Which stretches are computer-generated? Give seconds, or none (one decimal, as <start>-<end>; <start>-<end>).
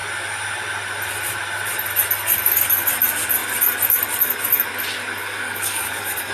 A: 5.2-6.3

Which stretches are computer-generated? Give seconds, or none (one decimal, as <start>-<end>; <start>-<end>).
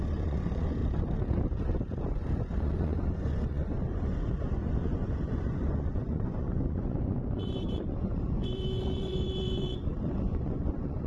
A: 0.0-0.8; 2.0-11.1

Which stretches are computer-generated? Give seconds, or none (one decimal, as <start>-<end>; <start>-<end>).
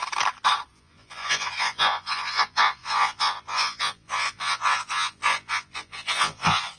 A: 0.7-6.8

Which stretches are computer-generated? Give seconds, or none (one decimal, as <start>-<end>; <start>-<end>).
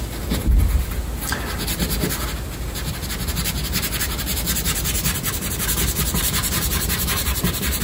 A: 6.4-7.8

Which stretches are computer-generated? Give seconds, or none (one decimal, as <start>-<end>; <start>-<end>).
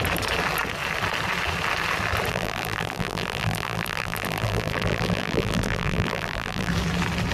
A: 2.3-6.7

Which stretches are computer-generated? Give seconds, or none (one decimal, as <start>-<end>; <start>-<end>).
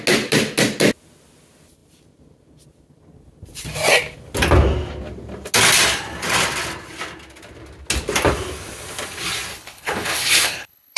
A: 9.5-11.0